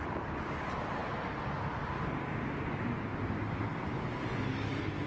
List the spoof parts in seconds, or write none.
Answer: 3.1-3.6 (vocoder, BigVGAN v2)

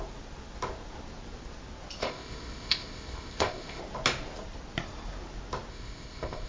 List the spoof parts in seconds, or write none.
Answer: 2.0-3.8 (codec, ZipCodec); 5.7-6.5

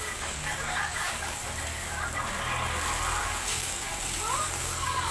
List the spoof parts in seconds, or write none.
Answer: 0.0-1.4 (codec, DAC); 3.2-3.9; 4.6-5.1